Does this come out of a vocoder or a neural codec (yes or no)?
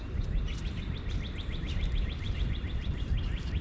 no